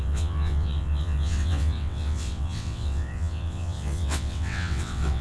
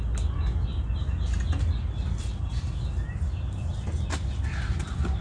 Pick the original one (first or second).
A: second